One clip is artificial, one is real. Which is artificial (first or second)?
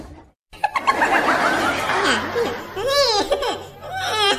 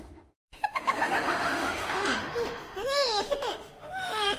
second